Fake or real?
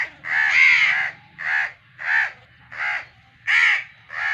real